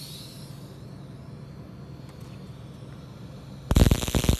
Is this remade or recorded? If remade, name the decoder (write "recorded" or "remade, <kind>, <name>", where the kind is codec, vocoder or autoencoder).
recorded